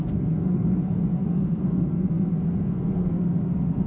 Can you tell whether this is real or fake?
fake